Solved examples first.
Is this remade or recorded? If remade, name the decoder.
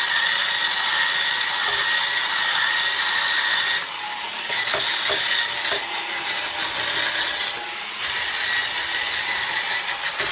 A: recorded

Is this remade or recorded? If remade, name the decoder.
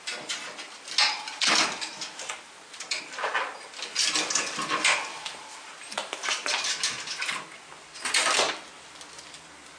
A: recorded